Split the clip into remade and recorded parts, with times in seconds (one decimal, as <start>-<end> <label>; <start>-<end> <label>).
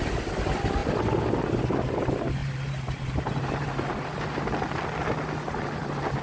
0.0-2.4 recorded; 2.4-4.8 remade; 4.8-6.2 recorded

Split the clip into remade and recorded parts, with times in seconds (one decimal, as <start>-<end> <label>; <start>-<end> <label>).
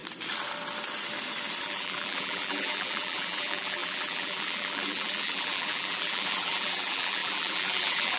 0.0-1.6 recorded; 1.6-8.2 remade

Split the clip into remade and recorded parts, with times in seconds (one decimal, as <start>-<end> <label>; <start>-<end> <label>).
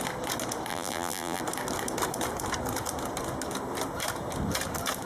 0.0-0.7 recorded; 0.7-1.4 remade; 1.4-5.1 recorded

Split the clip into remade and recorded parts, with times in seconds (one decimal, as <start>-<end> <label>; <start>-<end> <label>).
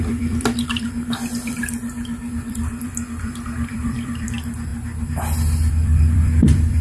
0.0-4.7 remade; 4.7-5.7 recorded; 5.7-6.8 remade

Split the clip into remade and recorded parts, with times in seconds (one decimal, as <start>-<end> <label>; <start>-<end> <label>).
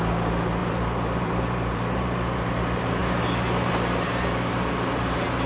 0.0-0.6 recorded; 0.6-2.4 remade; 2.4-5.5 recorded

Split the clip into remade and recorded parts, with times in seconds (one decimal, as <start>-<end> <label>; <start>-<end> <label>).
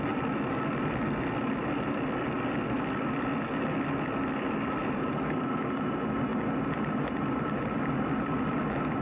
0.0-4.8 recorded; 4.8-5.6 remade; 5.6-9.0 recorded